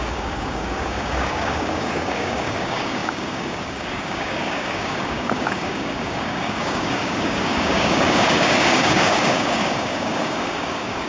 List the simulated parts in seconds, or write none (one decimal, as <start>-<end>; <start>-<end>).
0.0-11.1